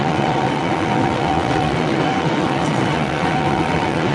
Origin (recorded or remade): remade